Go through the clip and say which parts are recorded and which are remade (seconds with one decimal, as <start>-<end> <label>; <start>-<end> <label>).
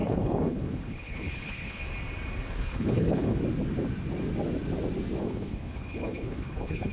0.0-1.8 remade; 1.8-2.5 recorded; 2.5-3.4 remade; 3.4-5.2 recorded; 5.2-6.9 remade